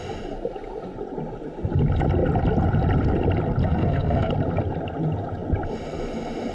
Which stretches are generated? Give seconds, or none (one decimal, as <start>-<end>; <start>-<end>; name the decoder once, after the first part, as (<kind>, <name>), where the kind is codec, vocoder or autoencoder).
3.6-4.3 (codec, SNAC)